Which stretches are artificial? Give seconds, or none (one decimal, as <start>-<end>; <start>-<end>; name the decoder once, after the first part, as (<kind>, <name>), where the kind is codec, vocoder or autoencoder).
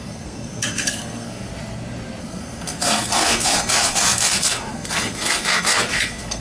0.0-1.5 (codec, SNAC); 2.2-6.4